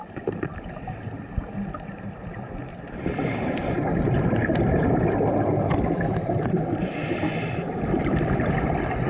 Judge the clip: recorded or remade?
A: remade